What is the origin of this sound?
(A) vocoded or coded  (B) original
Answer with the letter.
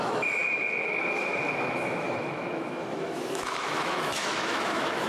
A